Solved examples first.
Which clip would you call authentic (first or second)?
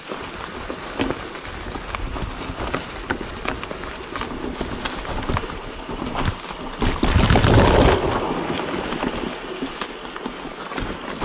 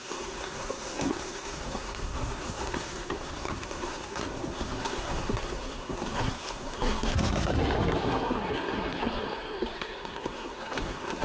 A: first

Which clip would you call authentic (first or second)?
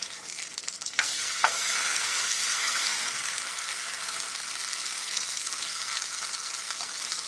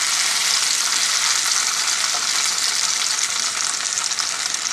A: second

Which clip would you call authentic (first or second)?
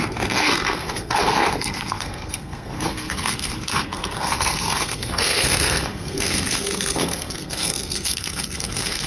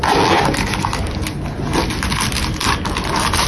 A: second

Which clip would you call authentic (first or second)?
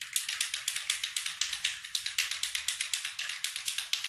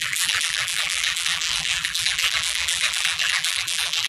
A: first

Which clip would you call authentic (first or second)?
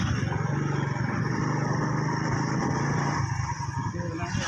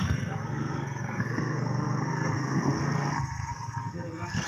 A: first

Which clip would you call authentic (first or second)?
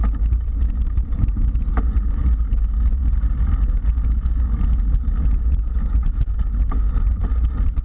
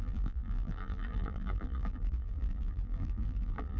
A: first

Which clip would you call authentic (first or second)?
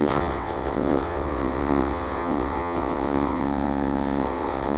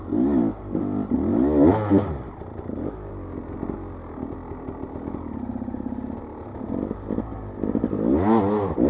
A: second